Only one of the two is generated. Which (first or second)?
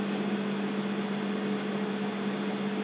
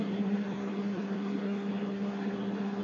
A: second